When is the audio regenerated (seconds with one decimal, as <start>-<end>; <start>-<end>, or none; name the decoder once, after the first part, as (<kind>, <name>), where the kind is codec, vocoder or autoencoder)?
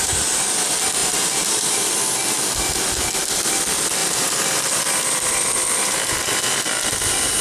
1.0-1.7 (vocoder, BigVGAN v2); 4.0-7.4